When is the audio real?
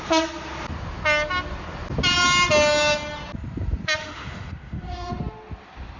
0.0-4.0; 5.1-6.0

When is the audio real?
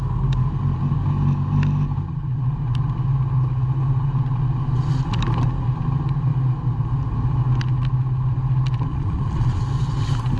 0.0-8.9; 9.6-10.4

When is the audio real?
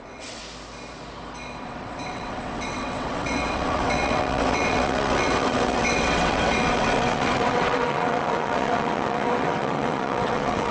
0.4-1.6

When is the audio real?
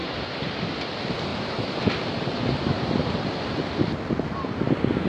0.6-5.1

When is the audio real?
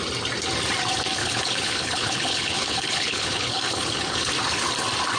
0.0-1.2; 4.3-5.2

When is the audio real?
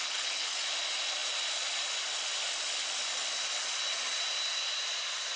0.6-5.4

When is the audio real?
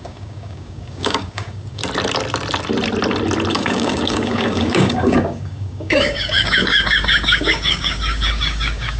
1.8-3.5